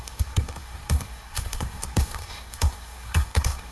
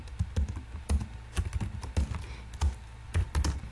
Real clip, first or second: second